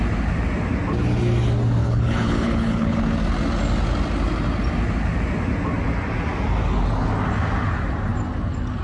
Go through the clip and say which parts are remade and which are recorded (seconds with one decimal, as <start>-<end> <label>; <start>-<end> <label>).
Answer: 0.0-1.8 recorded; 1.8-3.0 remade; 3.0-8.8 recorded